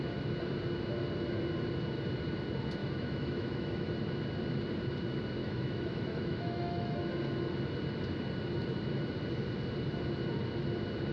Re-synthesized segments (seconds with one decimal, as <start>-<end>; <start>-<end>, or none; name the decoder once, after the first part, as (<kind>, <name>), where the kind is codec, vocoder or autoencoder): 2.8-3.9 (autoencoder, DAC-VAE); 5.4-7.0